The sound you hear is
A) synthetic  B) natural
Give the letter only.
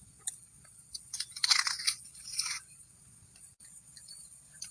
A